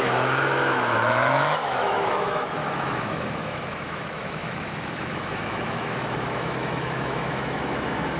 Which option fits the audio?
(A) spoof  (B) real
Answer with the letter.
A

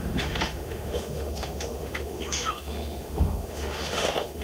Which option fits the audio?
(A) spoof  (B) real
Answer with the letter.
A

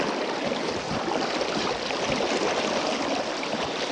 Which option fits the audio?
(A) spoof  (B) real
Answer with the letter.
B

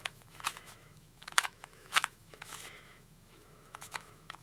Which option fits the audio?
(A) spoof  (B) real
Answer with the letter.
A